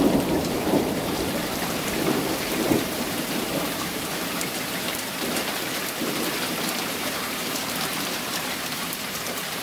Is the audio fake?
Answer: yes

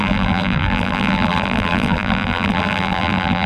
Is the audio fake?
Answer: yes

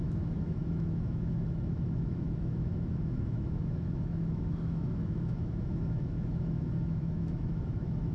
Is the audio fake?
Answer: yes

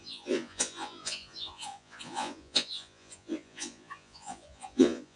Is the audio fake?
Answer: yes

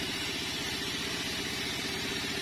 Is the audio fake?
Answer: yes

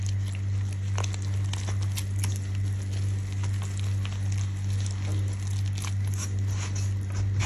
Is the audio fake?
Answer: no